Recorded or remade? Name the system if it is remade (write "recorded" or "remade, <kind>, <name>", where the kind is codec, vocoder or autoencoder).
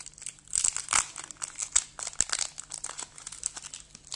recorded